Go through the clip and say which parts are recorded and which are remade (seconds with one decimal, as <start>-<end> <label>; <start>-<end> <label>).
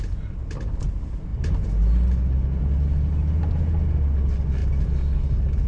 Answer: 0.0-5.7 recorded